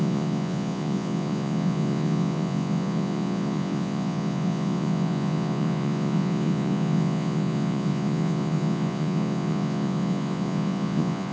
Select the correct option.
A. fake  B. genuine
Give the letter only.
A